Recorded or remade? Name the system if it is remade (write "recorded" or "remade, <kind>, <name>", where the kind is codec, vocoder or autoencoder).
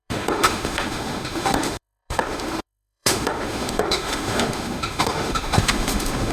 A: remade, autoencoder, DAC-VAE